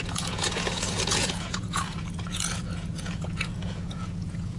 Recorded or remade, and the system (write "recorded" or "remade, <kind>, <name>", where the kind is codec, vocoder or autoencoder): remade, vocoder, Vocos